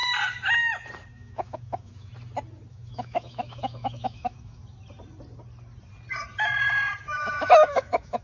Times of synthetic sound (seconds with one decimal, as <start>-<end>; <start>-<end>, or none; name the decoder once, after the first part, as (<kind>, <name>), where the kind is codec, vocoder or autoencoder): 1.1-2.1 (autoencoder, DAC-VAE); 2.7-4.6; 7.0-8.2